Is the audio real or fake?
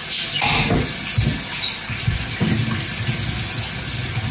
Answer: real